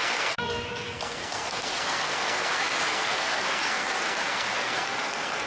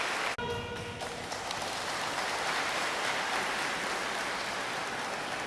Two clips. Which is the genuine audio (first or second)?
second